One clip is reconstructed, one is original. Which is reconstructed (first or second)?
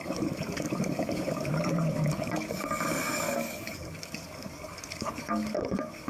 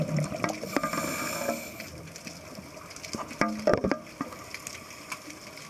first